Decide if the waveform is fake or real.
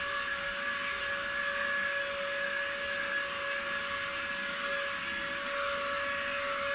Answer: real